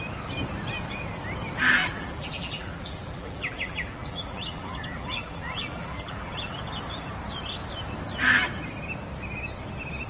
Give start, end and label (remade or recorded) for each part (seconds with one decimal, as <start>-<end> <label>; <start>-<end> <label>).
0.0-1.8 recorded; 1.8-6.6 remade; 6.6-10.1 recorded